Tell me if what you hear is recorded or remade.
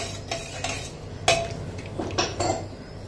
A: recorded